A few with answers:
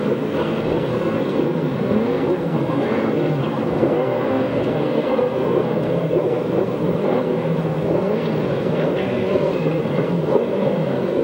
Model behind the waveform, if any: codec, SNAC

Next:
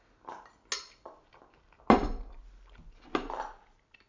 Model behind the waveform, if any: none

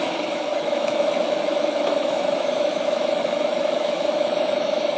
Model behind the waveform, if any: autoencoder, DAC-VAE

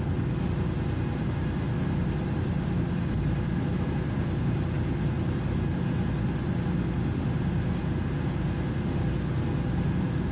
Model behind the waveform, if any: none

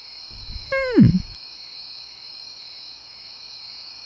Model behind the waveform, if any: autoencoder, DAC-VAE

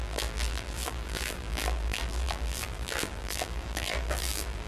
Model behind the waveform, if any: vocoder, BigVGAN v2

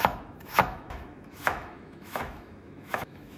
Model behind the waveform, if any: autoencoder, DAC-VAE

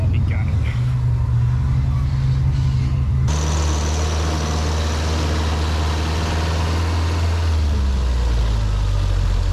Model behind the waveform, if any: none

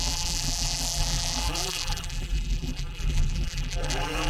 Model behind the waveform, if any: vocoder, BigVGAN v2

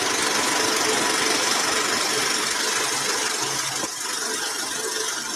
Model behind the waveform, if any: none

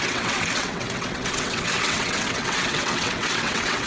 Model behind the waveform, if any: vocoder, WaveNeXt